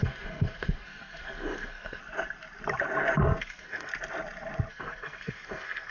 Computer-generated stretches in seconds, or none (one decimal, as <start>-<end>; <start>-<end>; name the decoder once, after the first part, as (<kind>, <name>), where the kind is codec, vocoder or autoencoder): 0.0-2.0 (codec, SNAC); 3.4-3.9; 4.7-5.9